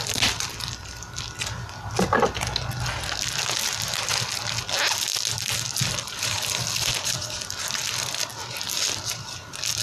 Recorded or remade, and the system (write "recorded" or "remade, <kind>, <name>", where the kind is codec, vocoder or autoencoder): recorded